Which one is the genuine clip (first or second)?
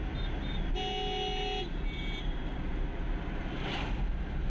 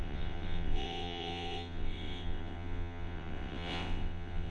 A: first